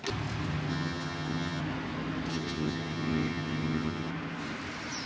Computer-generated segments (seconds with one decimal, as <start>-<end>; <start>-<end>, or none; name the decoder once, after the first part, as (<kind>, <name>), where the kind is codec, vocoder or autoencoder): 0.7-1.6 (vocoder, HiFi-GAN); 2.3-4.1